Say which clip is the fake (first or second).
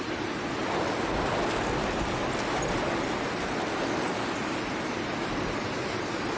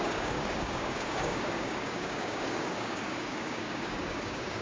second